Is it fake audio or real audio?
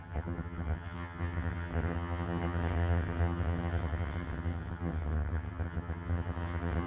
fake